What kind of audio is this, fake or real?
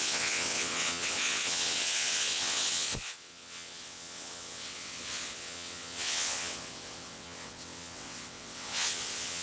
fake